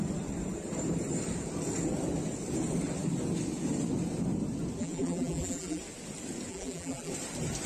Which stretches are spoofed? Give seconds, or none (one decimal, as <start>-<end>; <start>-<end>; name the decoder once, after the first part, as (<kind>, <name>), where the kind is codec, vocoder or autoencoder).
4.8-5.8 (vocoder, BigVGAN v2); 6.5-7.1